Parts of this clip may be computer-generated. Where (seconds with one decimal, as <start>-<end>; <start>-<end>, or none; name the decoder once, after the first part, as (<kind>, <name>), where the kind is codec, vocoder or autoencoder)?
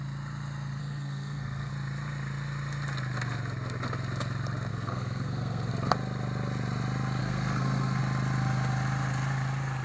0.8-1.7 (codec, SNAC); 4.7-5.7; 7.2-8.0